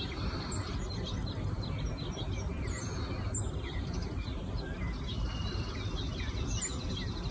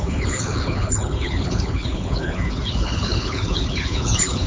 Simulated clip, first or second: second